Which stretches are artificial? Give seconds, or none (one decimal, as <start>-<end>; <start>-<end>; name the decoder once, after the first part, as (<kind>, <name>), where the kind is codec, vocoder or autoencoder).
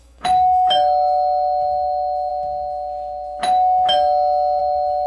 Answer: 0.0-2.3 (autoencoder, DAC-VAE); 4.6-5.1